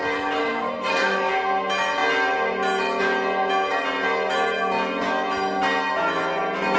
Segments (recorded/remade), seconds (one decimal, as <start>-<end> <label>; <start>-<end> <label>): 0.0-0.4 recorded; 0.4-1.3 remade; 1.3-6.8 recorded